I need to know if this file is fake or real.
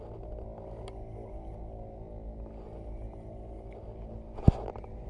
real